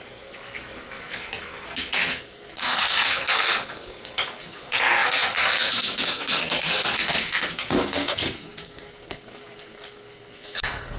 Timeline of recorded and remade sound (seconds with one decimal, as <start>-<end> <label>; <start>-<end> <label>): 0.0-11.0 remade